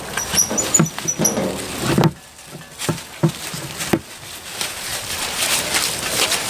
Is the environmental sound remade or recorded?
recorded